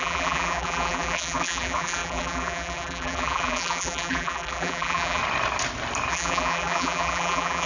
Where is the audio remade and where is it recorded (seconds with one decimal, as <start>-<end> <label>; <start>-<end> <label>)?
0.0-5.2 remade; 5.2-6.1 recorded; 6.1-7.7 remade